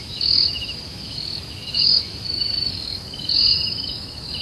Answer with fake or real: fake